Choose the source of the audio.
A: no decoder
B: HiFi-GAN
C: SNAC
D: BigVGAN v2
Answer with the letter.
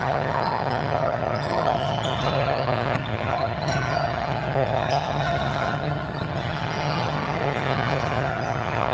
B